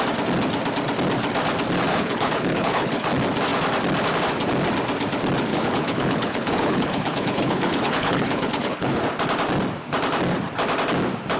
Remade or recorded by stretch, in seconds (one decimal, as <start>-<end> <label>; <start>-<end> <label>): 0.0-1.9 recorded; 1.9-3.1 remade; 3.1-5.5 recorded; 5.5-9.0 remade; 9.0-11.4 recorded